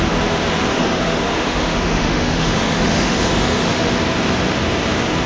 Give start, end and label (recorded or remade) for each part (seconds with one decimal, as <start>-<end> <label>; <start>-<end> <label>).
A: 0.0-0.7 recorded; 0.7-3.9 remade; 3.9-5.3 recorded